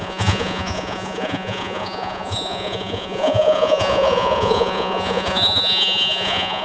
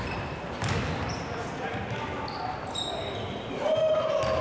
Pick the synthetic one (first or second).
first